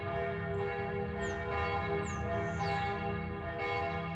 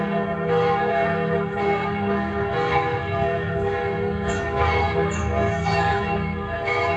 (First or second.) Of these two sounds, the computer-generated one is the second